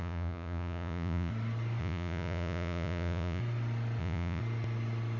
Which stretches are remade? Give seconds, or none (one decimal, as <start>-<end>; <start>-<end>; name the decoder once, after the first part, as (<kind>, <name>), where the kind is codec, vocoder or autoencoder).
0.0-1.3 (vocoder, Vocos); 1.8-3.4; 4.0-4.4